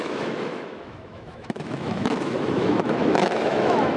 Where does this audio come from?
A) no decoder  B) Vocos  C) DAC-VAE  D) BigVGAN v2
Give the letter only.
C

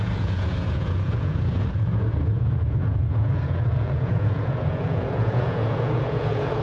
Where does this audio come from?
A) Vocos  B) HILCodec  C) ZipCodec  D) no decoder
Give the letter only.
A